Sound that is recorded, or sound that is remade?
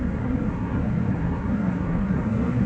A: remade